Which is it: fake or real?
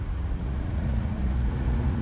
fake